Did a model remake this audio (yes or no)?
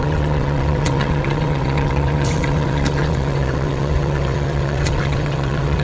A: yes